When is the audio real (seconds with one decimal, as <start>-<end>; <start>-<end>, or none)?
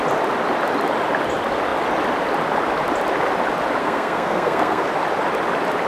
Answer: 0.0-3.8; 4.9-5.9